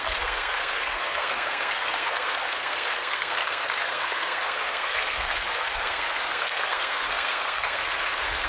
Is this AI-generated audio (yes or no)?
yes